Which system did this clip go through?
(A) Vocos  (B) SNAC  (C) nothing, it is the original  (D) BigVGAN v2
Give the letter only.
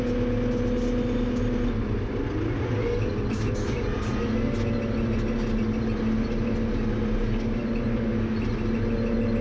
C